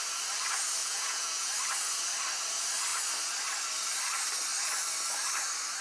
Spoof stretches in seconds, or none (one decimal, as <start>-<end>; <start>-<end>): 0.8-1.5